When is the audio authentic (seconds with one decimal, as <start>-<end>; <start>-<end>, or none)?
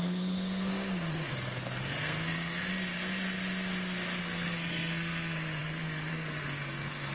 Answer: 0.7-1.3; 2.7-4.2